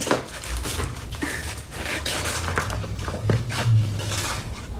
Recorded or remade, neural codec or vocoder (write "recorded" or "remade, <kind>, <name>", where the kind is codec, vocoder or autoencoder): remade, codec, DAC